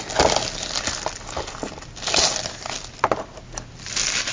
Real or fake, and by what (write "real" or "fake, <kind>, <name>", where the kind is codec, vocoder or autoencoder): real